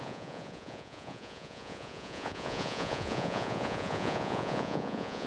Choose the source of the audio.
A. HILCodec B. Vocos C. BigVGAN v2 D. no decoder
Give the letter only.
B